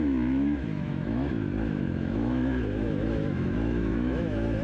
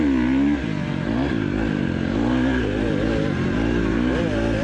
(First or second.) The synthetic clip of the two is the first